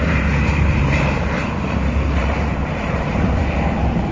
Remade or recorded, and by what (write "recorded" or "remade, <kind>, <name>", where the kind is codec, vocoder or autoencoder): remade, vocoder, BigVGAN v2